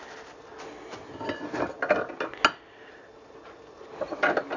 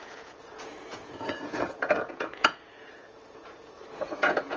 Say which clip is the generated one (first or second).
second